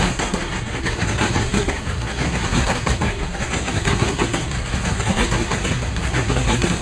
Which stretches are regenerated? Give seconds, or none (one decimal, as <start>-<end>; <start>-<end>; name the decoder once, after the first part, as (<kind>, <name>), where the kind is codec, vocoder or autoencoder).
0.0-6.8 (codec, SNAC)